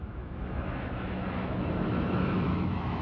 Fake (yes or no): yes